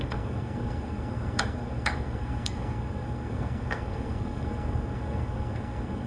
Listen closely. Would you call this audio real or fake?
fake